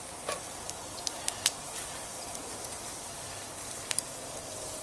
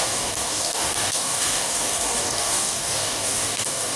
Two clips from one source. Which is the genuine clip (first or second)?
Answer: first